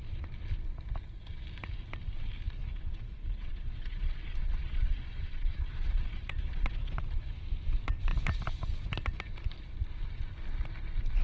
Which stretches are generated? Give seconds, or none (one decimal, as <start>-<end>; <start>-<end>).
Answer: 2.6-7.0